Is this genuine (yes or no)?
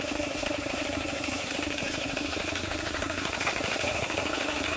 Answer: no